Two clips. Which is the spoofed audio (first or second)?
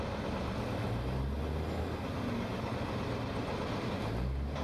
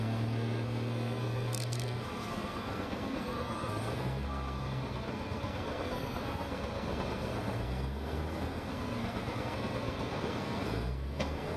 second